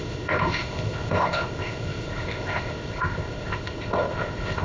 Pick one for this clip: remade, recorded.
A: remade